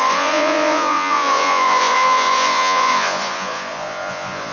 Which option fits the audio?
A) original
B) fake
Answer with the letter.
B